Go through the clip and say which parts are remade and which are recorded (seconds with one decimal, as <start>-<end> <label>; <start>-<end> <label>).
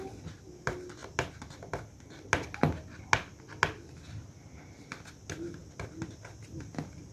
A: 0.0-7.1 recorded